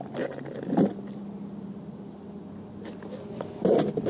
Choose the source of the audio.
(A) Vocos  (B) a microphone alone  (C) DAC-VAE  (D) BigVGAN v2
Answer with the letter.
B